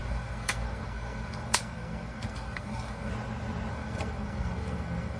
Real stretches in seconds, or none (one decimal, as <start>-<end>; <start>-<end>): 3.1-3.7